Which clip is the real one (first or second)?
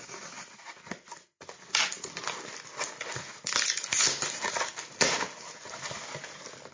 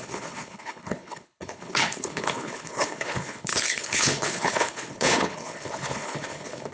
first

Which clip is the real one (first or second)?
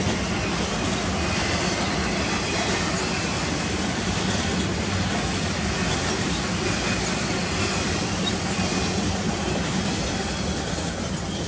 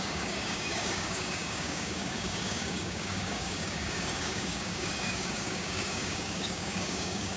first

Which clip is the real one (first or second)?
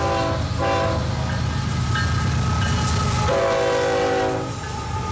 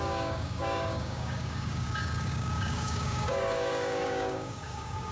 first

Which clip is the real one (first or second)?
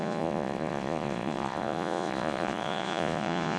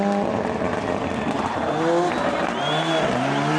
second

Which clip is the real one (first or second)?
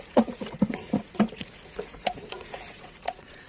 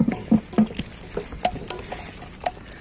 second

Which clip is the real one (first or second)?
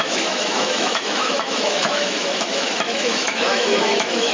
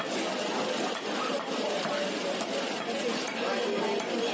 second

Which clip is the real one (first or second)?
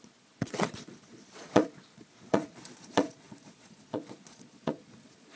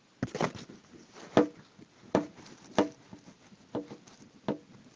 second